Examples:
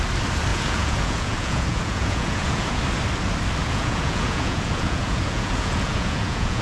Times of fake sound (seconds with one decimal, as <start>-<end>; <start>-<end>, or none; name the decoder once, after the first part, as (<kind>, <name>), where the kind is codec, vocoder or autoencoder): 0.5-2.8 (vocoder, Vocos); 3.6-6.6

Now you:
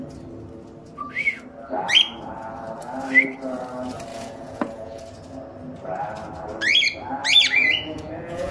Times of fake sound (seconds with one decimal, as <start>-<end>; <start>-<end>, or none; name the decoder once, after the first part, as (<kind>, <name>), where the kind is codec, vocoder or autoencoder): 4.1-5.0 (vocoder, Vocos); 7.2-8.5

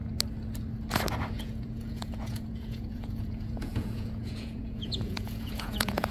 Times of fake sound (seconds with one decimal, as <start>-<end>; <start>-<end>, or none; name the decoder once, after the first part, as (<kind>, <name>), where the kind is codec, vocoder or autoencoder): 1.4-6.1 (vocoder, Vocos)

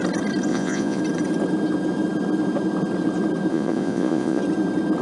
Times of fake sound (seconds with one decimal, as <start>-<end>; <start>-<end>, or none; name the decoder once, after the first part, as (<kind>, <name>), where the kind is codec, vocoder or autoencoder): 0.5-1.0 (vocoder, Vocos); 3.5-4.4

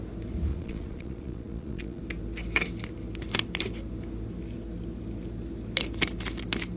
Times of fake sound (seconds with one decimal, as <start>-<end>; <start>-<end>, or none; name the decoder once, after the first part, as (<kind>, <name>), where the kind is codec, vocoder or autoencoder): 0.5-2.0 (vocoder, Vocos)

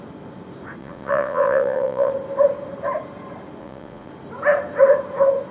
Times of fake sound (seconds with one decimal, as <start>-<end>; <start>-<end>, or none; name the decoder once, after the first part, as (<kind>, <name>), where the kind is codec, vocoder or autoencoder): 0.8-2.1 (vocoder, Vocos); 3.6-4.1